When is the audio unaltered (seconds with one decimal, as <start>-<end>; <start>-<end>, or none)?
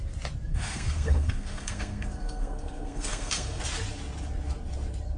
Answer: 0.0-0.5; 3.6-5.2